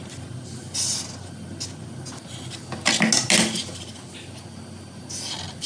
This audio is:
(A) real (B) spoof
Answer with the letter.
A